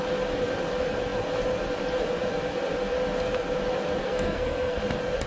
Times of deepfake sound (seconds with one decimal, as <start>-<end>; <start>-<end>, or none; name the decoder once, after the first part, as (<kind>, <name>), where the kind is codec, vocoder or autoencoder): 4.0-4.8 (codec, SNAC)